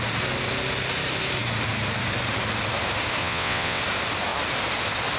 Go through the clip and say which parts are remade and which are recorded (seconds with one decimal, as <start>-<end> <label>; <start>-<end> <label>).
0.0-3.2 recorded; 3.2-3.8 remade; 3.8-5.2 recorded